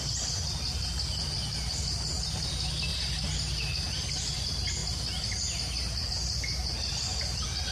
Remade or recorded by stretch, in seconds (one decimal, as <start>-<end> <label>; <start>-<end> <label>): 0.0-7.7 recorded